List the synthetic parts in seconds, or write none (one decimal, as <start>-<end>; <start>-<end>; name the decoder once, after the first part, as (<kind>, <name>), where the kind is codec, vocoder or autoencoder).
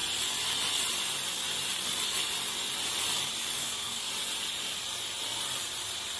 3.6-4.1 (codec, SNAC)